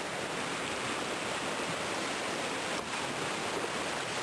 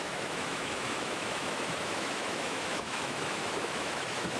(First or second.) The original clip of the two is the first